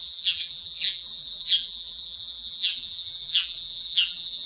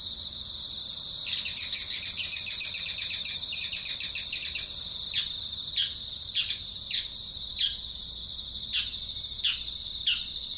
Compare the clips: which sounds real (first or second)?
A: second